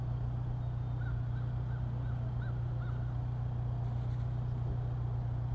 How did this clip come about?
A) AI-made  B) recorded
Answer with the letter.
B